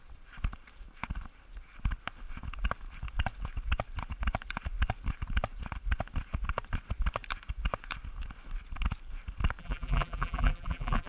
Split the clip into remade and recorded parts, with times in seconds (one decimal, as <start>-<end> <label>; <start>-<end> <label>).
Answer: 0.0-9.6 recorded; 9.6-11.1 remade